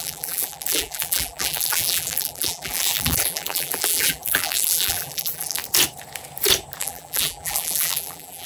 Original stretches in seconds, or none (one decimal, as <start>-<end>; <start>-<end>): 5.6-6.8